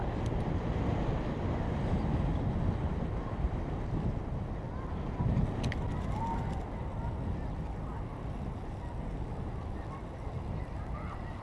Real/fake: real